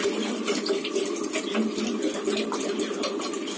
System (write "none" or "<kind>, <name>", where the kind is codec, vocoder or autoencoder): none